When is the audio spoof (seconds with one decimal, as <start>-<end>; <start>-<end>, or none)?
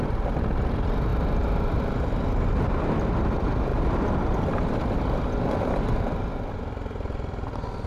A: none